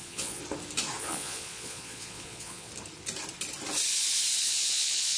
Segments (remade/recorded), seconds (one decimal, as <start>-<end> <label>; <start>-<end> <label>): 0.0-0.4 remade; 0.4-1.0 recorded; 1.0-2.7 remade; 2.7-4.4 recorded; 4.4-5.2 remade